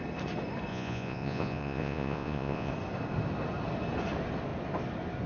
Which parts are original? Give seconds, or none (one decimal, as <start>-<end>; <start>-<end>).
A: 0.0-0.7; 2.7-5.3